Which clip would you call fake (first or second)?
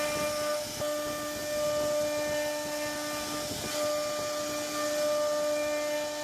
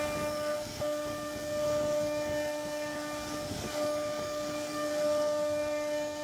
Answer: second